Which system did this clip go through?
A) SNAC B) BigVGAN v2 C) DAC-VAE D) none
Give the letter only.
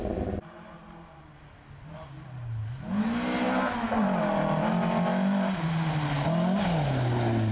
D